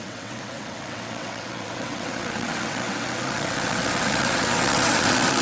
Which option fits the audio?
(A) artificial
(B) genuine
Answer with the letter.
A